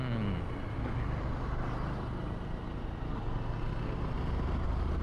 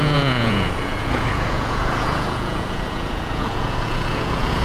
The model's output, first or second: second